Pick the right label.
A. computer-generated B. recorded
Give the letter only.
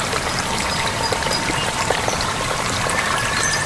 A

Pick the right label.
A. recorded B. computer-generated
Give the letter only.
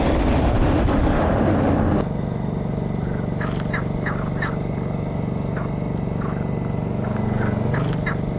A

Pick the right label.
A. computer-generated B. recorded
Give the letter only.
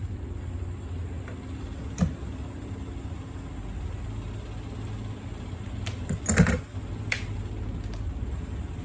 B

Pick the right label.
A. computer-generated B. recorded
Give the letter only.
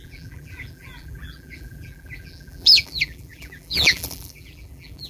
A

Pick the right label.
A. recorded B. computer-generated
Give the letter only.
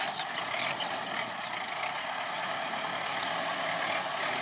A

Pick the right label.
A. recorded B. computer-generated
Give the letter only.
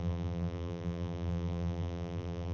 B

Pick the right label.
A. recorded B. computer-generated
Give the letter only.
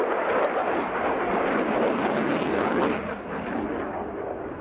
A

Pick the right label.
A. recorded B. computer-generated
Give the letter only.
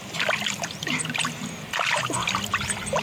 A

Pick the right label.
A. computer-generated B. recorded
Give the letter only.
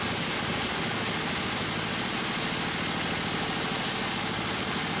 B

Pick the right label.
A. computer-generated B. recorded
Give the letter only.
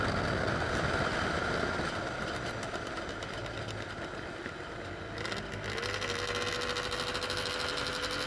B